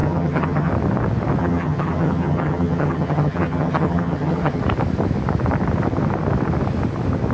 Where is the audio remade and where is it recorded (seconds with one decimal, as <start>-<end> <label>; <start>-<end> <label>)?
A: 0.0-0.7 remade; 0.7-1.4 recorded; 1.4-4.6 remade; 4.6-7.3 recorded